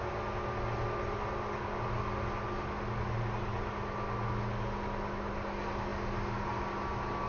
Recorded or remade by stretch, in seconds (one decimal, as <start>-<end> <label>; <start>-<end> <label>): 0.0-7.3 recorded

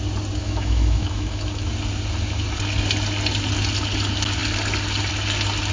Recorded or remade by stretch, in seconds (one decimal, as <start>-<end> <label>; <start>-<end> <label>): 0.0-0.4 recorded; 0.4-1.7 remade; 1.7-5.7 recorded

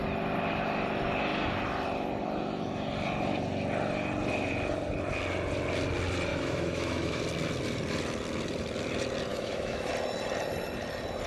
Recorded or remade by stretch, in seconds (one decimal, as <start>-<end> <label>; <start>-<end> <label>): 0.0-6.3 recorded; 6.3-7.2 remade; 7.2-9.3 recorded; 9.3-9.9 remade; 9.9-11.3 recorded

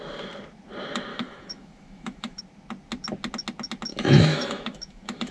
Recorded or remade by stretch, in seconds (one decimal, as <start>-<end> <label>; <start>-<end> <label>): 0.0-1.1 recorded; 1.1-2.4 remade; 2.4-3.9 recorded; 3.9-5.3 remade

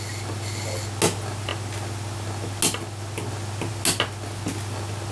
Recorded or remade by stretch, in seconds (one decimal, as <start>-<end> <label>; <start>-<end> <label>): 0.0-5.1 recorded